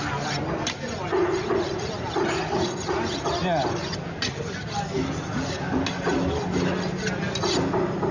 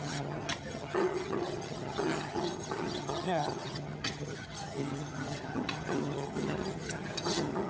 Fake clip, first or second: second